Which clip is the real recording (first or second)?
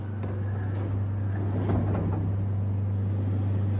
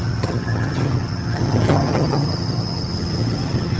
first